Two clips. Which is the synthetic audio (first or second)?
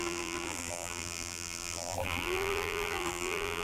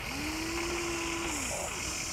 first